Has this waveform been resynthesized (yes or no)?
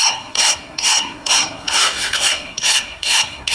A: yes